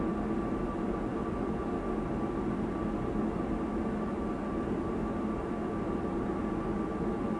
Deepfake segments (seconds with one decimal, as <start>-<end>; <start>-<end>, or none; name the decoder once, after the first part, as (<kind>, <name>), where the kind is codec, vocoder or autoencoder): none